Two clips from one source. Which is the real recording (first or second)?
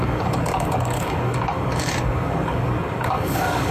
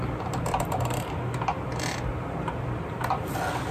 second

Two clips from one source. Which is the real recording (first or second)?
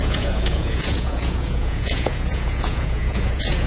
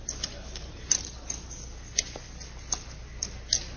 second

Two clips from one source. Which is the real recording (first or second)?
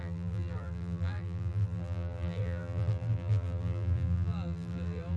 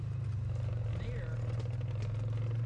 second